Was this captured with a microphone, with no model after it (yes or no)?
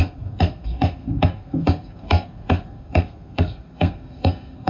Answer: no